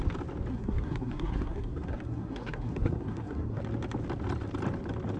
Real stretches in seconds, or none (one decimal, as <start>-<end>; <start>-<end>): 0.0-0.5; 3.6-5.2